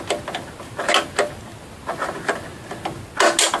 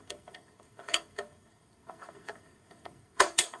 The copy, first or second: second